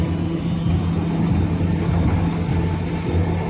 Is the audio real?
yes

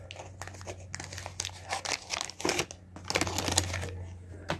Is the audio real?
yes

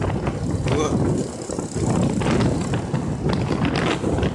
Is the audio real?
yes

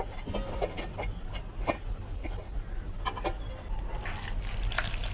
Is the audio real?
yes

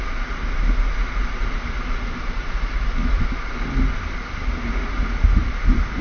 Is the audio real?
yes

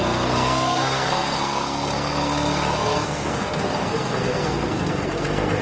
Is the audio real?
no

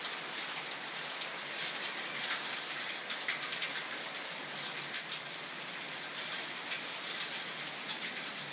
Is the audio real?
yes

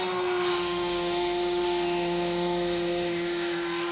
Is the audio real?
no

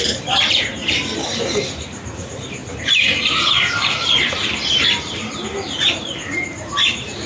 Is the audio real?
no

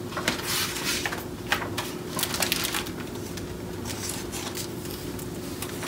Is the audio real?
yes